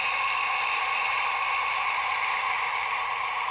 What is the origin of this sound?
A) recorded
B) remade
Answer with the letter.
A